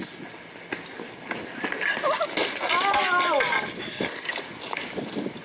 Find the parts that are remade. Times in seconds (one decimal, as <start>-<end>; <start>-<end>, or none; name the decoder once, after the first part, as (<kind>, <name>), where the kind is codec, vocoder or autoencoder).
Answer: none